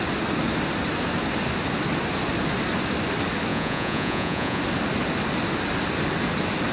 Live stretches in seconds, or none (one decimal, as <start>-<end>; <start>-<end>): 0.0-3.5; 4.6-6.7